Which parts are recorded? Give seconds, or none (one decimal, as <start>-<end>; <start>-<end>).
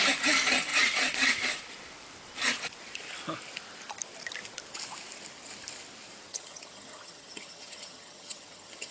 0.0-6.3